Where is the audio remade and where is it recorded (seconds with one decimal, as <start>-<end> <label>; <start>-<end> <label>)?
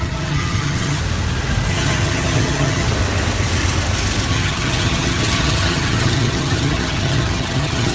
0.0-1.0 remade; 1.0-1.7 recorded; 1.7-2.9 remade; 2.9-4.3 recorded; 4.3-7.9 remade